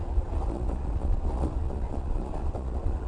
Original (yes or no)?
no